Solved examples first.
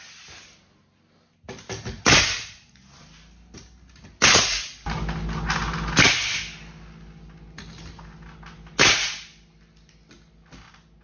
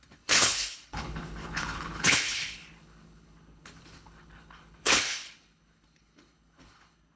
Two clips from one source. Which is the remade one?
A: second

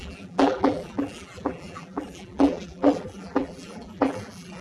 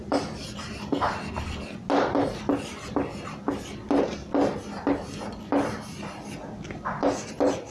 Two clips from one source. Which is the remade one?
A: first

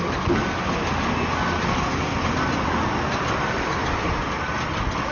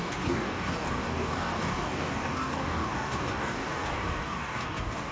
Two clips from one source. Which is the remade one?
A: second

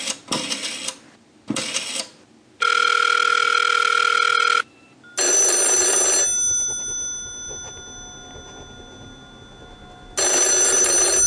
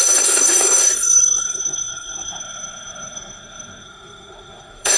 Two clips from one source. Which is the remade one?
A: second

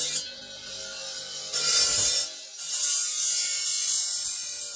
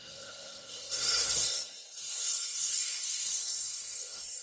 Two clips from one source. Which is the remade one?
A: second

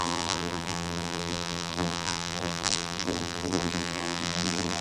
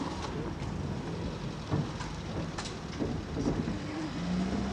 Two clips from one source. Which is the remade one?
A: first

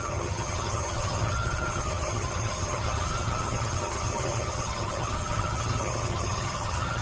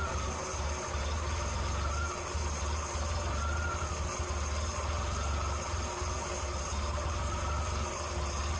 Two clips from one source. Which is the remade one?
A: first